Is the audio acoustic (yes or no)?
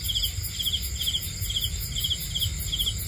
yes